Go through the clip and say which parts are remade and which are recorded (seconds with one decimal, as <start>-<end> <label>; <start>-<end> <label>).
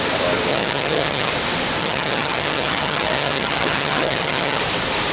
0.0-0.5 recorded; 0.5-1.3 remade; 1.3-1.8 recorded; 1.8-4.6 remade; 4.6-5.1 recorded